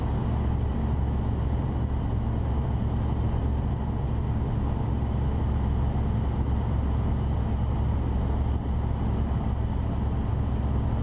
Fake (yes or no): no